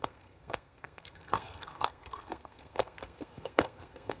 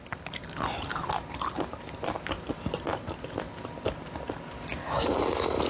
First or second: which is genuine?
second